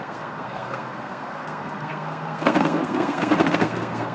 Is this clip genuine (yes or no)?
no